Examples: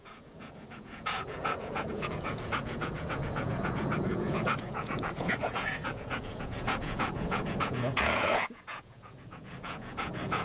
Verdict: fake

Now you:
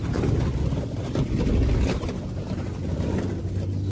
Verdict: real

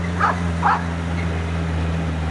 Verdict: real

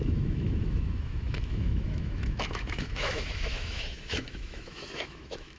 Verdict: fake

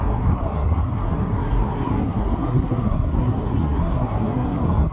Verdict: fake